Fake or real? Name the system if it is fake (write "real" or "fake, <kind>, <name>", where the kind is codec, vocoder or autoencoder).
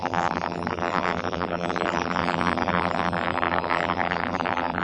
fake, vocoder, BigVGAN v2